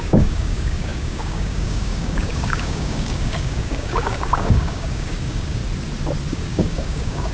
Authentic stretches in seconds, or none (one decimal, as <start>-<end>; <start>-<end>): 5.6-6.3